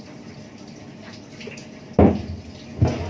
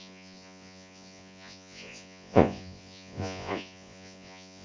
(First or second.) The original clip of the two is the first